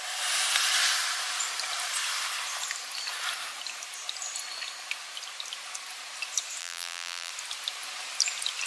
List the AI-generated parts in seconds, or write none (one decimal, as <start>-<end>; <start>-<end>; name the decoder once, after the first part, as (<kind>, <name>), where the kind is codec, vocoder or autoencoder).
6.6-7.3 (vocoder, BigVGAN v2)